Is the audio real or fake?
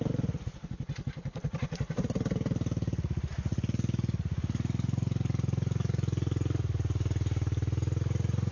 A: real